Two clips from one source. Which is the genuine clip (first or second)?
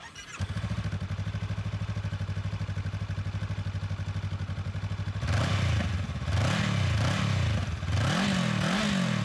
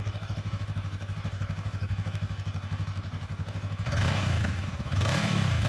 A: first